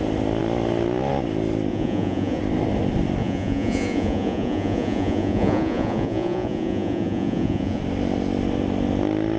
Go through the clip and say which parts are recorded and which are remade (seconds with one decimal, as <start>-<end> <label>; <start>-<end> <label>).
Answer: 0.0-1.7 recorded; 1.7-2.4 remade; 2.4-3.2 recorded; 3.2-7.8 remade; 7.8-9.4 recorded